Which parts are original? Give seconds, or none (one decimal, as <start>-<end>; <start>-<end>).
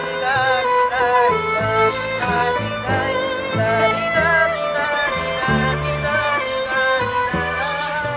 0.0-1.3; 2.4-7.3